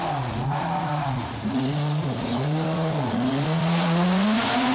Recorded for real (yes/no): no